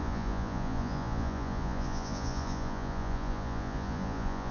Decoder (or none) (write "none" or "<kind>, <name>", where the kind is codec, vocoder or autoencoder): vocoder, Vocos